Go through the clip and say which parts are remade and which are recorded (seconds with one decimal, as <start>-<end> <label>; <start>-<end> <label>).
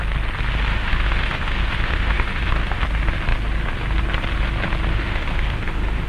0.0-0.7 recorded; 0.7-2.8 remade; 2.8-4.9 recorded; 4.9-6.1 remade